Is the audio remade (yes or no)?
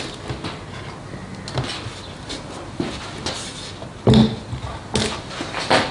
no